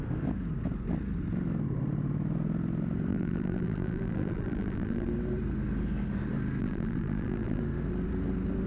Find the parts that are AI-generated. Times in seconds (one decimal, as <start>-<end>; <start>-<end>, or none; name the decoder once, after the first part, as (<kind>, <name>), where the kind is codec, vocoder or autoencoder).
3.1-5.1 (vocoder, BigVGAN v2); 6.6-7.6

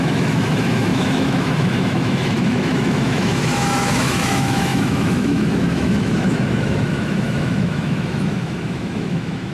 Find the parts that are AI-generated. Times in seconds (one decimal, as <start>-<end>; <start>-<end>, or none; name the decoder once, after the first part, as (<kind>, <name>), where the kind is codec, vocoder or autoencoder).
0.0-9.5 (autoencoder, DAC-VAE)

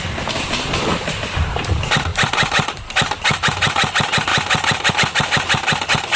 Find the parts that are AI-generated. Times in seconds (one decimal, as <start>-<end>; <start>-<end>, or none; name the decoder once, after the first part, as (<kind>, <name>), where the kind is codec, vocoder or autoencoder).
0.9-1.7 (vocoder, BigVGAN v2); 2.1-2.8

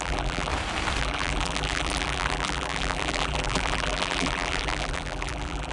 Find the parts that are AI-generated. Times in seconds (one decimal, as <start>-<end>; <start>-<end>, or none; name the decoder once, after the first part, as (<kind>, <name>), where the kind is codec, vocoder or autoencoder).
0.0-0.5 (vocoder, BigVGAN v2); 1.0-5.7